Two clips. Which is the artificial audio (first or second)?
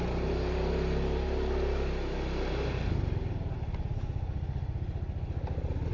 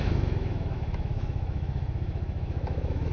second